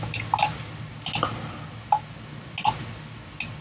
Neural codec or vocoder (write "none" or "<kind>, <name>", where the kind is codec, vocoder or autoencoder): none